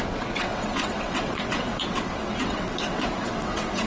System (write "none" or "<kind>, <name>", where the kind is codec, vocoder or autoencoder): vocoder, WaveNeXt